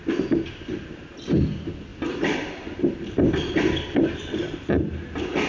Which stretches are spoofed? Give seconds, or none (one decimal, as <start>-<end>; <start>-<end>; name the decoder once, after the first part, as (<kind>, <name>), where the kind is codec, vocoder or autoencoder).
none